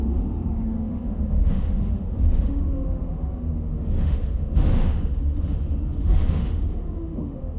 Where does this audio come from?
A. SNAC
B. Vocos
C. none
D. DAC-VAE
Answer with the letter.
D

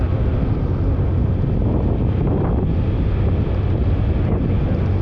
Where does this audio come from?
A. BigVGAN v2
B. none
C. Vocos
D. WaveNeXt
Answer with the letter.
B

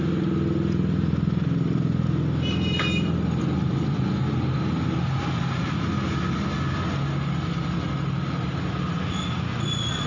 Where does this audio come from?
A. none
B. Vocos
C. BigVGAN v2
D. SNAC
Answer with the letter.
A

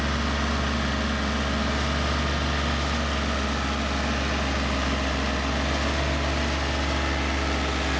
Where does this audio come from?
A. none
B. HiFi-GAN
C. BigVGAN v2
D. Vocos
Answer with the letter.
A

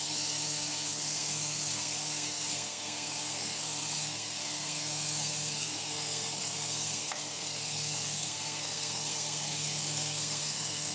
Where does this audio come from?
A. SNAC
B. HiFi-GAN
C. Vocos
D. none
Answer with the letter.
A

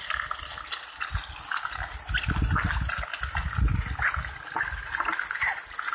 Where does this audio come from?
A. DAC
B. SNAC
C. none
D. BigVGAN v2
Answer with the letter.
C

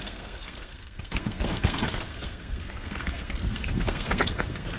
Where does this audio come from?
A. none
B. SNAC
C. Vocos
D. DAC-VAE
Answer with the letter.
B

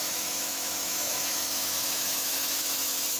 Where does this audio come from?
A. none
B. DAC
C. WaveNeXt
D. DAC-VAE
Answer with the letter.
D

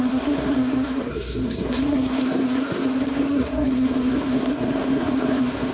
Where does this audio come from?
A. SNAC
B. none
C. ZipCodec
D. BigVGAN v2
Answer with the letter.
A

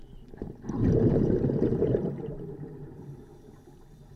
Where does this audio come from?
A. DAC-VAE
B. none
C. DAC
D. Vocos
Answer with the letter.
B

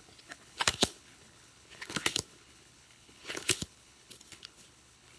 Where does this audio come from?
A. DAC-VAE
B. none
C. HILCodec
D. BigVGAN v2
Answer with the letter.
C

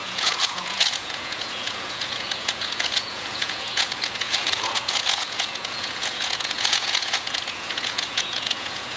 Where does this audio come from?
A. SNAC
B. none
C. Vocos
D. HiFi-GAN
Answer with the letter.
C